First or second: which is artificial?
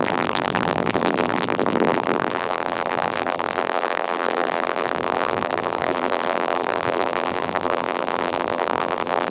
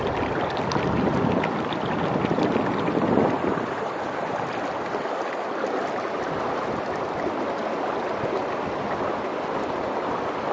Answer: first